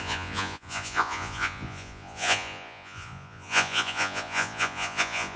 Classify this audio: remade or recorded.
remade